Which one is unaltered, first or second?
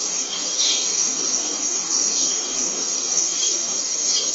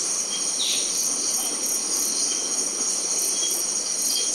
second